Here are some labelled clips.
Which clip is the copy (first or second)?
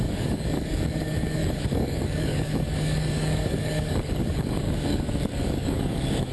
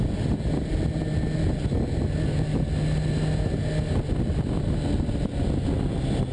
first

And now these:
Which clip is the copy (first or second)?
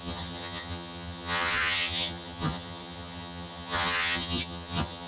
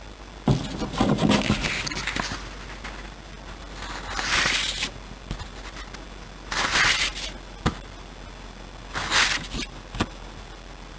first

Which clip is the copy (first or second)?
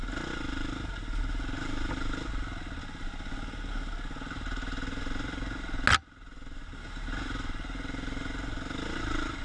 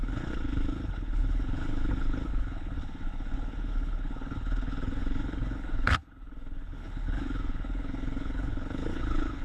second